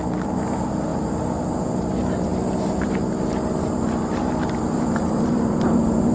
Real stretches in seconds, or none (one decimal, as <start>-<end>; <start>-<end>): 0.0-6.1